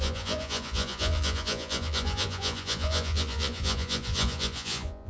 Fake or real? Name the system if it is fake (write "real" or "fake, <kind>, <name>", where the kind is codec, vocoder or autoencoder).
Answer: fake, vocoder, Vocos